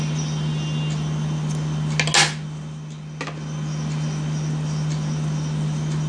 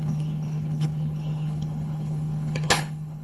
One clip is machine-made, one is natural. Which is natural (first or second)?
first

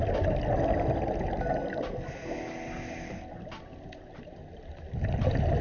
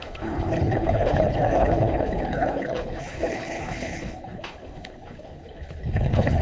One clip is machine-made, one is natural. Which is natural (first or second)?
first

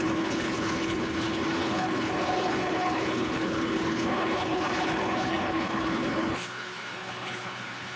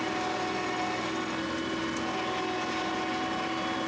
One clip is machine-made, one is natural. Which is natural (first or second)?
second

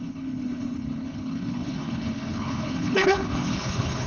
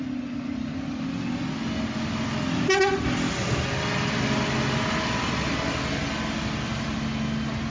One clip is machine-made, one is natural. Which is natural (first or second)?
second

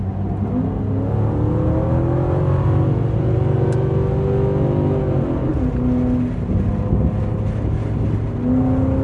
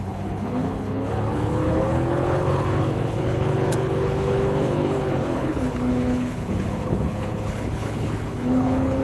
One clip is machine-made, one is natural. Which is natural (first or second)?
first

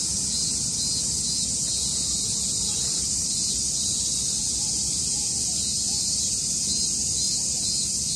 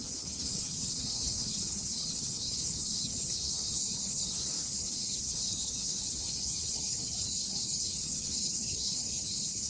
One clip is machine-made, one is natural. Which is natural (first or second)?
first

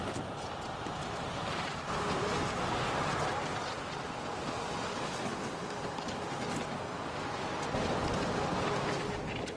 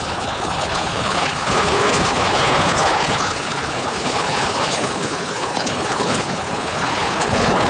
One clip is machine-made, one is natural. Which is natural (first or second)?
first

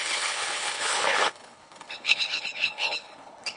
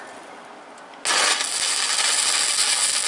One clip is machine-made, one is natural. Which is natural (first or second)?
second